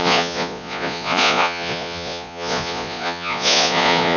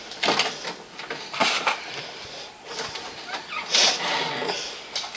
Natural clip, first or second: second